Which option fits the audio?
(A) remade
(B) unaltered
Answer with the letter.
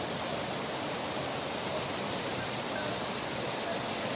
B